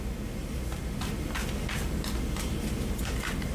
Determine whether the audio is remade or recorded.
recorded